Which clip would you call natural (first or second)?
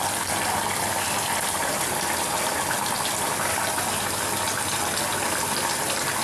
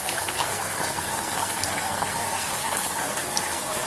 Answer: first